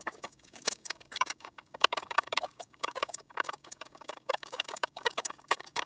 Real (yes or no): no